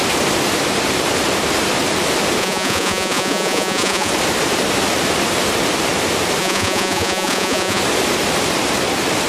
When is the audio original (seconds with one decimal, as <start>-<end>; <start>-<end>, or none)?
0.0-2.4; 4.1-6.4; 7.8-9.3